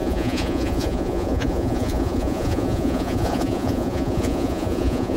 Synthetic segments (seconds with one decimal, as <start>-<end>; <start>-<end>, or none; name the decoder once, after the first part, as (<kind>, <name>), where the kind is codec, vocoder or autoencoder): 0.0-5.2 (vocoder, Vocos)